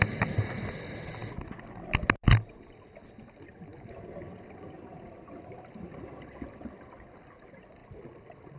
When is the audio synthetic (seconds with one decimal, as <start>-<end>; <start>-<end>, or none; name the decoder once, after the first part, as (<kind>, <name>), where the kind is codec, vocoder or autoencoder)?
none